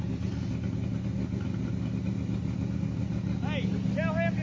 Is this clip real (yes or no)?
yes